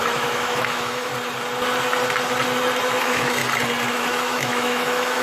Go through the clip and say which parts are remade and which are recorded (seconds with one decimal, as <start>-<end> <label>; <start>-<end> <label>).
0.0-1.1 remade; 1.1-3.0 recorded; 3.0-3.4 remade; 3.4-3.9 recorded; 3.9-5.2 remade